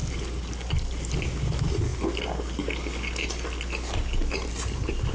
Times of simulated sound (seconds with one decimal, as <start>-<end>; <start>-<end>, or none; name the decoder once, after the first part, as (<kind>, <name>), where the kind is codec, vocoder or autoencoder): none